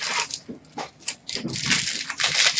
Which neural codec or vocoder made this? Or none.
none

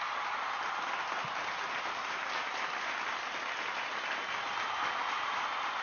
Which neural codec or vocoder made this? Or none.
none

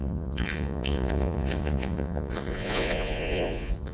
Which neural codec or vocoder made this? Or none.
vocoder, Vocos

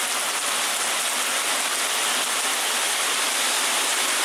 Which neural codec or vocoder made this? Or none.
none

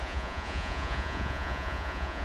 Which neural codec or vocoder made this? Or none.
vocoder, Vocos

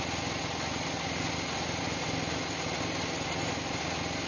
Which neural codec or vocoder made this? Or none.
none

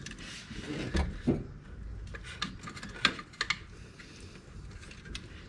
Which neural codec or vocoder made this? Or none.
none